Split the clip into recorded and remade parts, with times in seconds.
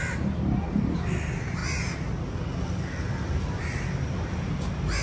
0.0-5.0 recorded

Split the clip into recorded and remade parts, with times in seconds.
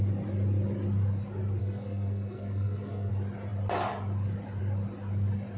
0.0-1.6 recorded; 1.6-3.1 remade; 3.1-5.6 recorded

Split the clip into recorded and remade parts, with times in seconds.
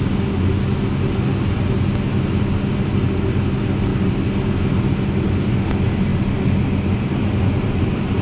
0.0-8.2 recorded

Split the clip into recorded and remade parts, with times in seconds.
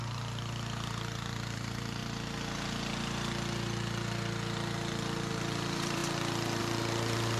0.0-2.0 remade; 2.0-5.3 recorded; 5.3-6.0 remade; 6.0-6.6 recorded; 6.6-7.4 remade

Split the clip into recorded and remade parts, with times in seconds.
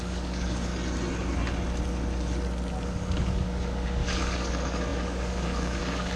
0.0-0.7 remade; 0.7-2.8 recorded; 2.8-6.2 remade